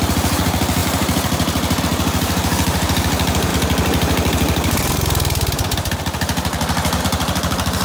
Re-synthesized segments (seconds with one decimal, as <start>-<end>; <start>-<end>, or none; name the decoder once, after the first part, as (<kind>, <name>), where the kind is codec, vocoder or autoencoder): 0.0-7.8 (vocoder, BigVGAN v2)